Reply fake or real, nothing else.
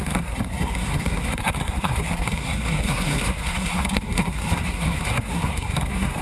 fake